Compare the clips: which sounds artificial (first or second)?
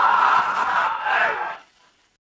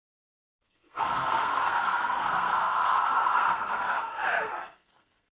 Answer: second